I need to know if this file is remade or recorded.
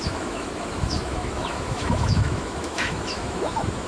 remade